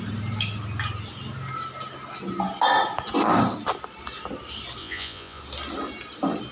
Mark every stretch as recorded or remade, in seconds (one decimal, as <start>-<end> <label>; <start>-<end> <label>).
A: 0.0-4.8 recorded; 4.8-5.4 remade; 5.4-6.5 recorded